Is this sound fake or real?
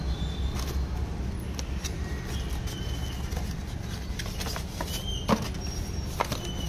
real